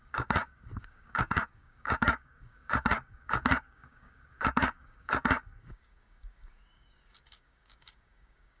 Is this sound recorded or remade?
remade